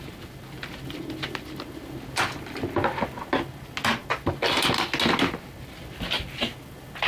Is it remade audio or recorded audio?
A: recorded